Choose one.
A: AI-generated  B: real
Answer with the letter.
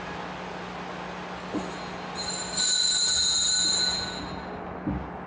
B